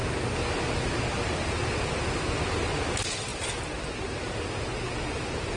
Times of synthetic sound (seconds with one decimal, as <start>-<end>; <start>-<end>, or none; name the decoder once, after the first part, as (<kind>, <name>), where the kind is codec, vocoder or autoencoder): none